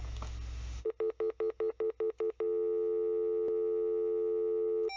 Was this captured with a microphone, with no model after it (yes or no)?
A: yes